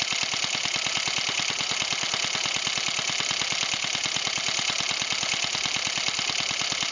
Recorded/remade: recorded